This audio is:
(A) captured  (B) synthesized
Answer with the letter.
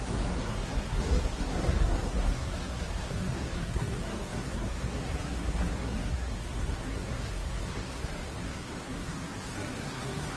B